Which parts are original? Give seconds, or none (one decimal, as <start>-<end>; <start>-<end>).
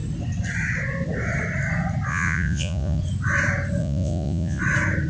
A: 0.0-2.1; 3.0-3.8; 4.6-5.1